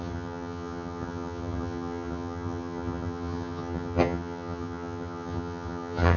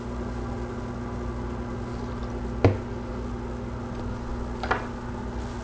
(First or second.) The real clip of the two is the second